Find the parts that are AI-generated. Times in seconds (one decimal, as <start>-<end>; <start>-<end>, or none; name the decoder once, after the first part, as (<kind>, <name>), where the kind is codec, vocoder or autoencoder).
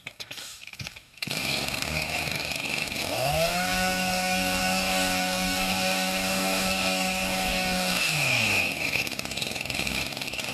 0.0-10.5 (codec, DAC)